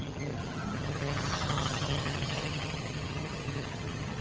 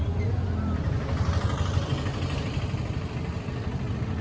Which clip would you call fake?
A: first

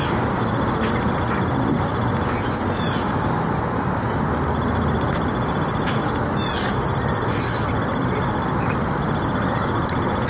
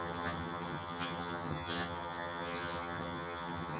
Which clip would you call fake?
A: second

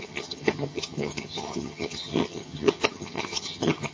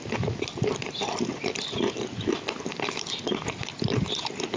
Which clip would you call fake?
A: first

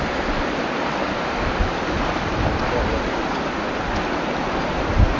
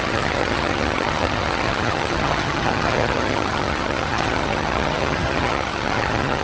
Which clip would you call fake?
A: second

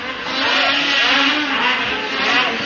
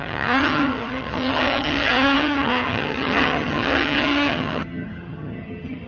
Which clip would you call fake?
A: second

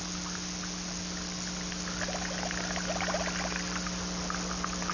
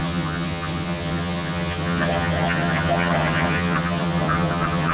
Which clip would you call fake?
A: second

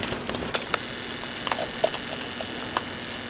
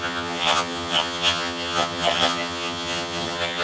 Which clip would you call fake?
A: second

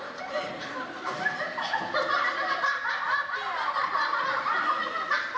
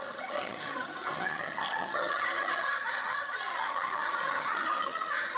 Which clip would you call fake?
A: second